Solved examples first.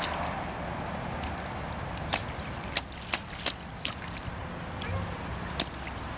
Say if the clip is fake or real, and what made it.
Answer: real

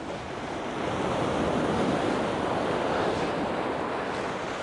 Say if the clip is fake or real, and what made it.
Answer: real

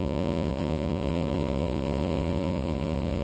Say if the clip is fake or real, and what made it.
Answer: fake, vocoder, Vocos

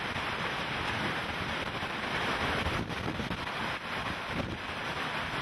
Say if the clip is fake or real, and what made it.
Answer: fake, vocoder, BigVGAN v2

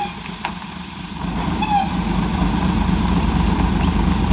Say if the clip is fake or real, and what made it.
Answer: real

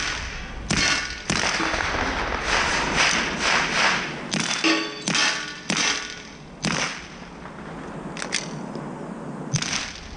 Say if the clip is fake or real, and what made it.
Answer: real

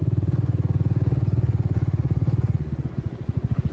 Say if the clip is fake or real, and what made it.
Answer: fake, vocoder, Vocos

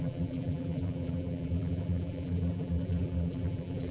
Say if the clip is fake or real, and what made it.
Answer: fake, vocoder, BigVGAN v2